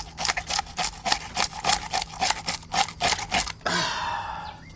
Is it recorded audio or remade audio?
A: recorded